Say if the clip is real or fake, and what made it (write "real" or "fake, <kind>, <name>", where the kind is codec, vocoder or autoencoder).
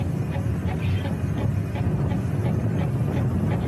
real